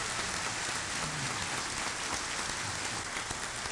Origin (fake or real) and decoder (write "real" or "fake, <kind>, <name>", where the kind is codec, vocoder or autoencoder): real